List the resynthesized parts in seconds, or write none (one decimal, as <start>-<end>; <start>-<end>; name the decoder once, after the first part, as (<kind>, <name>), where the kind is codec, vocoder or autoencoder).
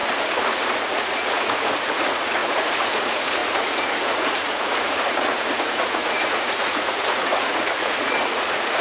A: 0.0-8.8 (vocoder, Vocos)